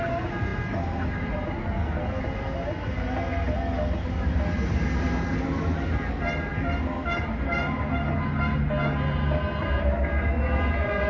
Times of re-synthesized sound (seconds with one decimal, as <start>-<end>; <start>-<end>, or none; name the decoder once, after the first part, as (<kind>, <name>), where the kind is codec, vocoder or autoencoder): 1.6-2.2 (codec, SNAC)